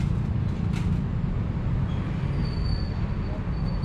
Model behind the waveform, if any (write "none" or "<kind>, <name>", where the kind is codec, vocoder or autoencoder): none